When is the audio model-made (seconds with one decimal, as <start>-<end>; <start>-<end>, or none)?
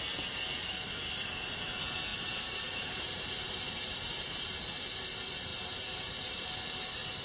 2.1-4.6; 5.5-6.4